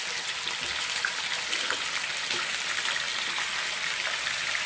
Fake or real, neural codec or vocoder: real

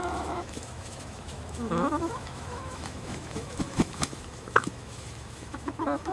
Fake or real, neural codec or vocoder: fake, autoencoder, DAC-VAE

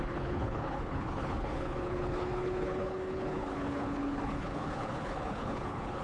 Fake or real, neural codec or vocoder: fake, codec, HILCodec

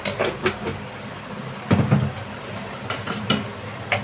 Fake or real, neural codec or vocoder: real